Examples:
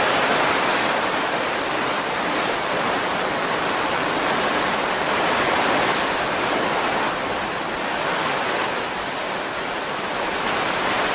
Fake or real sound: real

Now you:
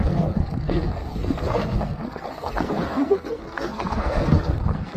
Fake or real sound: fake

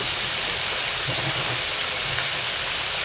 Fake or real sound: real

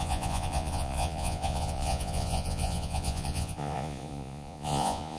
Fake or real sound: fake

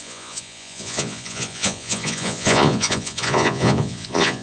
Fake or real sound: fake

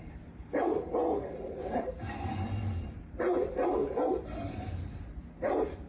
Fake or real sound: fake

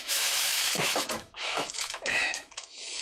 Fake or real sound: fake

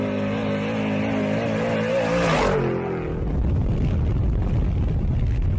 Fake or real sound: real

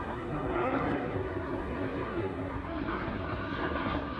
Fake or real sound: fake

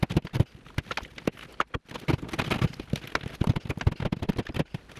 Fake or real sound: real